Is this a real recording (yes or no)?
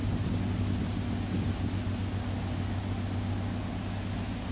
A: yes